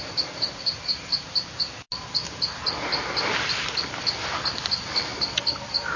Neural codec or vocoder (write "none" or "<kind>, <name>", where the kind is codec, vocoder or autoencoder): none